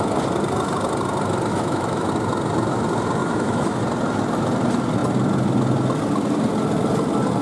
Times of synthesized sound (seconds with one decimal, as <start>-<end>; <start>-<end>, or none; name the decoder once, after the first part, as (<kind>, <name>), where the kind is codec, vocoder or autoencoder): 1.5-2.1 (autoencoder, DAC-VAE); 3.2-3.8